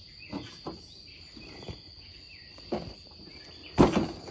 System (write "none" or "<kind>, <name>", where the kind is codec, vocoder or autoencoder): none